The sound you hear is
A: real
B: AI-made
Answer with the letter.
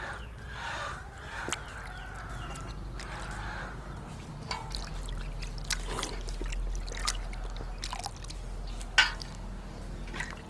A